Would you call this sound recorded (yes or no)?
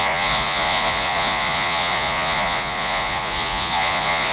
no